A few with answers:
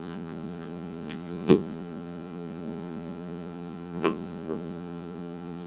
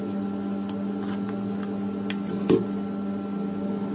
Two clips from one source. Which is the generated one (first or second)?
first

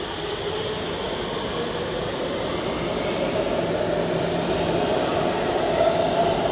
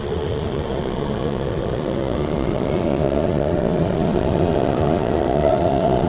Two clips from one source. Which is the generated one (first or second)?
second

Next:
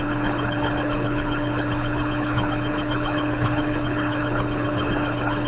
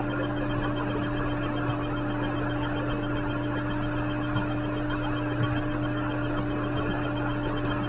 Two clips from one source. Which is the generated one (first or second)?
first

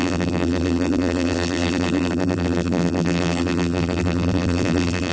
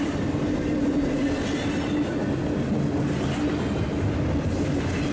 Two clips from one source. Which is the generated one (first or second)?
first